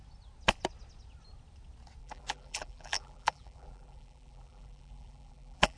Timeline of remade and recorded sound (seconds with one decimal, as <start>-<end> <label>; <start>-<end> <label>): 0.0-2.0 recorded; 2.0-5.8 remade

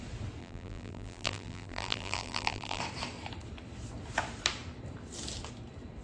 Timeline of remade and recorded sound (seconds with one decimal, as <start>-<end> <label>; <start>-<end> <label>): 0.0-0.4 recorded; 0.4-2.8 remade; 2.8-6.0 recorded

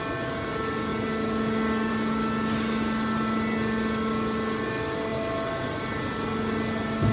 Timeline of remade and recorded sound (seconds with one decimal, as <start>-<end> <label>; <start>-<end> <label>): 0.0-7.1 recorded

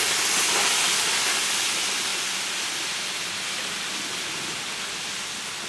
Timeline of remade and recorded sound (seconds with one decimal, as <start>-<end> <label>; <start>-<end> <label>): 0.0-5.7 recorded

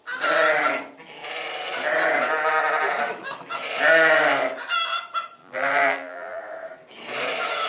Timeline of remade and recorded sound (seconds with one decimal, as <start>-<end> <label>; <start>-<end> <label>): 0.0-5.4 recorded; 5.4-6.4 remade; 6.4-7.7 recorded

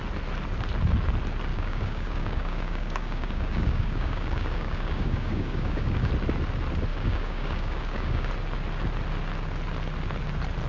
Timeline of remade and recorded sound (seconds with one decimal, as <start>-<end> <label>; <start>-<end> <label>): 0.0-1.5 recorded; 1.5-6.1 remade; 6.1-6.9 recorded; 6.9-8.3 remade; 8.3-10.7 recorded